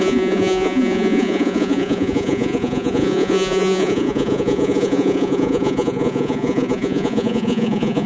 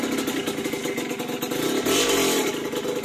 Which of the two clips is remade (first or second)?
first